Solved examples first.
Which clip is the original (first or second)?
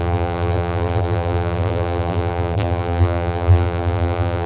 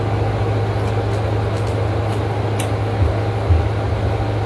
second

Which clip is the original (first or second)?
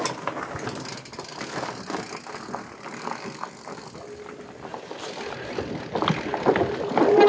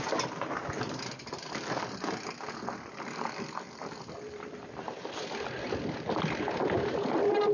first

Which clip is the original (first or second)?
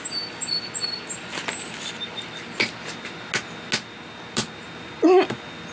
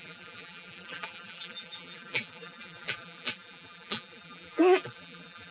first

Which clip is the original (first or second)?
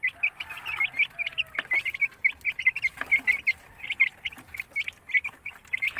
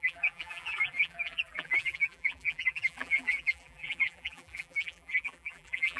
first